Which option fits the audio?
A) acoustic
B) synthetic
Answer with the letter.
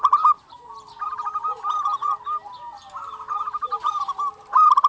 A